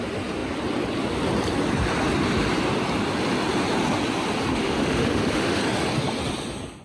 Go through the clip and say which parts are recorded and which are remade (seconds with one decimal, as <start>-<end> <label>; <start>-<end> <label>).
0.0-4.5 recorded; 4.5-5.6 remade; 5.6-6.8 recorded